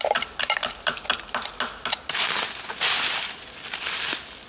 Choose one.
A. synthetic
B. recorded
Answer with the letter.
B